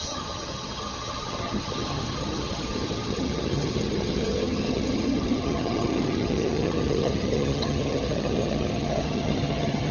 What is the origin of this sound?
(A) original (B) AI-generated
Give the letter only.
B